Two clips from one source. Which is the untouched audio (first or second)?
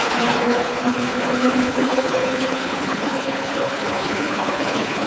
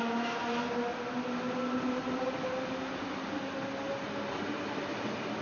second